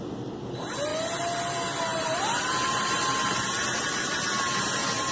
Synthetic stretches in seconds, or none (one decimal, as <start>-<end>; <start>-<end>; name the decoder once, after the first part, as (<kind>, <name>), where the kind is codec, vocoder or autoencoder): 1.9-4.3 (vocoder, BigVGAN v2)